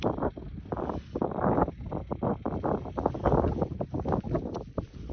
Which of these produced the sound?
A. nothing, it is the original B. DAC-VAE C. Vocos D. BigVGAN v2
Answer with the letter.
A